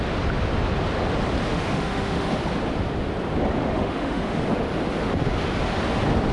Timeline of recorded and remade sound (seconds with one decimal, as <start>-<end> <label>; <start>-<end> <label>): 0.0-1.5 recorded; 1.5-2.3 remade; 2.3-3.6 recorded; 3.6-4.4 remade; 4.4-6.3 recorded